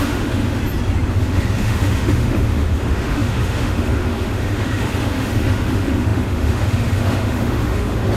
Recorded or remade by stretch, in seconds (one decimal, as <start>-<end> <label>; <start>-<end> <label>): 0.0-0.6 remade; 0.6-1.1 recorded; 1.1-8.2 remade